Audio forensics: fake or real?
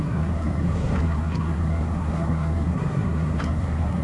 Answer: fake